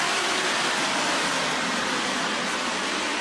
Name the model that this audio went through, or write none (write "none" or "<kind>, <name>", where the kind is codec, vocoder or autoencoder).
none